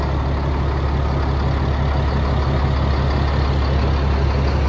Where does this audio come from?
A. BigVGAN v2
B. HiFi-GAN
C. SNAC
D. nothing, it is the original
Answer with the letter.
D